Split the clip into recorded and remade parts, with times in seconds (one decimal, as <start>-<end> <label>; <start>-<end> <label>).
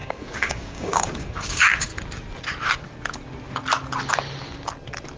0.0-1.9 remade; 1.9-5.2 recorded